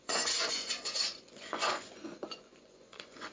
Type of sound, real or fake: fake